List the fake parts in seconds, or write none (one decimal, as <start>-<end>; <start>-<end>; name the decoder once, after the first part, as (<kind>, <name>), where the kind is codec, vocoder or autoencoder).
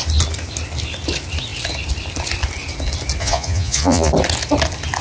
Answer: 3.2-4.1 (vocoder, Vocos)